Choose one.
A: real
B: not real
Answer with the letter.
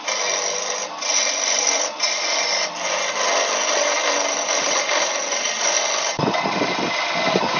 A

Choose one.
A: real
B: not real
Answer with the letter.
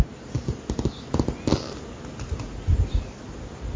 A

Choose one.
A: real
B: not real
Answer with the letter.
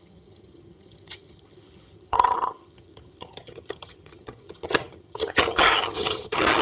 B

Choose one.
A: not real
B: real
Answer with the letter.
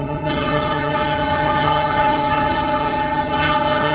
A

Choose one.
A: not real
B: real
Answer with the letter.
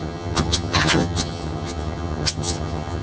A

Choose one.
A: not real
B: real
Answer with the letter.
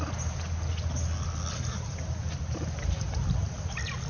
B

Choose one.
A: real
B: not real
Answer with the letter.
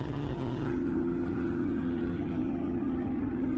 B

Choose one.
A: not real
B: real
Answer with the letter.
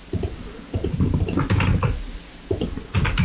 B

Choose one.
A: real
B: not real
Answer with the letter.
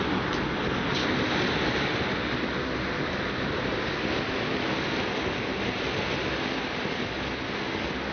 A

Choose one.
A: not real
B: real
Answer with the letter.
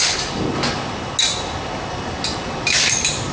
B